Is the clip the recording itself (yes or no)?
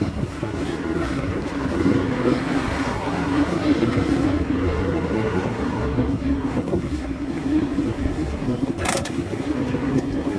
no